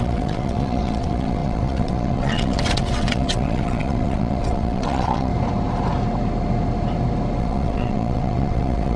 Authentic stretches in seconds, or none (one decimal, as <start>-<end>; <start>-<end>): 5.3-7.4